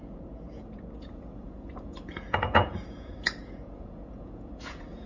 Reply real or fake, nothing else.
fake